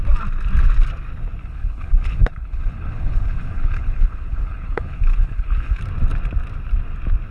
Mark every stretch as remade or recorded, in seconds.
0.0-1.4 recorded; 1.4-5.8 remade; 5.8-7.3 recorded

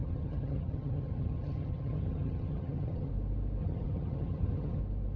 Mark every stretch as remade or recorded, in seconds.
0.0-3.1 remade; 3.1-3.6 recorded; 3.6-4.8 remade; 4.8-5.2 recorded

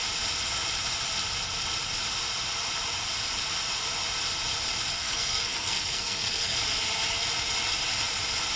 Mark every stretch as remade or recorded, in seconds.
0.0-5.0 recorded; 5.0-6.6 remade; 6.6-8.6 recorded

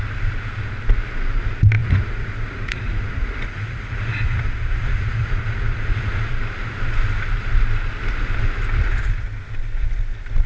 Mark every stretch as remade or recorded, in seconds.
0.0-1.8 recorded; 1.8-6.3 remade; 6.3-10.5 recorded

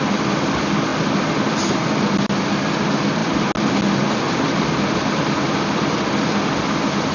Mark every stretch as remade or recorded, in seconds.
0.0-7.1 recorded

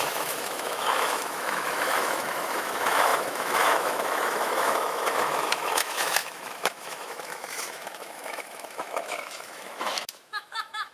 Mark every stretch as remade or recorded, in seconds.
0.0-10.9 remade

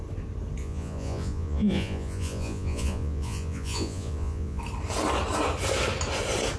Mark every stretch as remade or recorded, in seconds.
0.0-0.6 recorded; 0.6-4.6 remade; 4.6-6.6 recorded

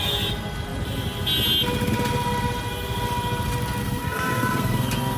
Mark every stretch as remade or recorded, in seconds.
0.0-3.8 recorded; 3.8-5.2 remade